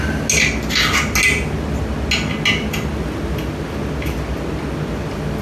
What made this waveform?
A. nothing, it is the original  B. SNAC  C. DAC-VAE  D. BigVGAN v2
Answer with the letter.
A